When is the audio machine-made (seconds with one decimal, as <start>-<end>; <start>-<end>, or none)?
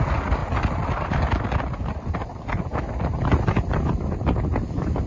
none